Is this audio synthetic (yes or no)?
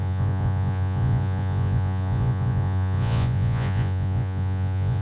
yes